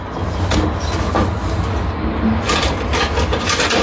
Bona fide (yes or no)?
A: yes